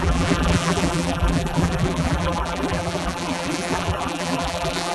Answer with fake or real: fake